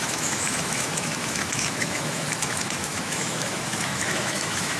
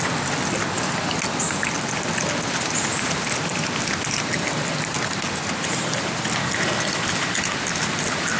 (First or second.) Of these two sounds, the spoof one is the first